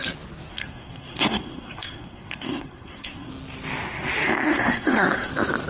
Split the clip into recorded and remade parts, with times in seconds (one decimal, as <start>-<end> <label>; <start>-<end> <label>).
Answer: 0.0-0.5 recorded; 0.5-3.3 remade; 3.3-4.5 recorded; 4.5-5.3 remade; 5.3-5.7 recorded

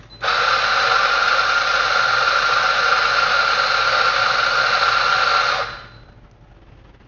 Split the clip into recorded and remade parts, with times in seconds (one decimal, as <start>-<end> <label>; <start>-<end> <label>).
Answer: 0.0-7.1 recorded

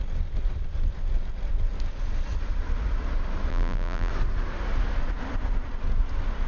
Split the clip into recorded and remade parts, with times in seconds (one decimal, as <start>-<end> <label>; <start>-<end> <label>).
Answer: 0.0-3.5 recorded; 3.5-4.1 remade; 4.1-6.5 recorded

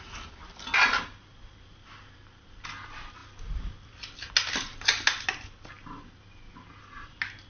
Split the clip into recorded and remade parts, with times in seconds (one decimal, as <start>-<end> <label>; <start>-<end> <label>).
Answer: 0.0-3.2 recorded; 3.2-4.3 remade; 4.3-7.5 recorded

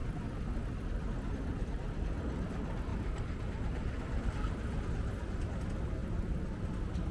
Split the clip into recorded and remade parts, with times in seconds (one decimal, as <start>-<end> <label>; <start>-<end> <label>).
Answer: 0.0-7.1 recorded

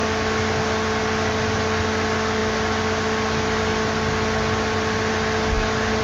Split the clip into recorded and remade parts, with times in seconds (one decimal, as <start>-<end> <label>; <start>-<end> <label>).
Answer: 0.0-6.0 recorded

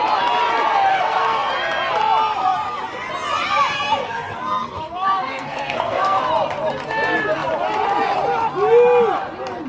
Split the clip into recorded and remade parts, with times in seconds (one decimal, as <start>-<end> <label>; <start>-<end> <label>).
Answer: 0.0-0.9 recorded; 0.9-1.5 remade; 1.5-4.0 recorded; 4.0-6.2 remade; 6.2-9.7 recorded

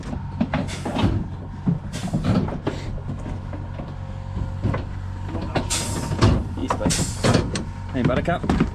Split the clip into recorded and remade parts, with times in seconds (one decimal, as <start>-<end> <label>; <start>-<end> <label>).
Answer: 0.0-6.6 recorded; 6.6-8.7 remade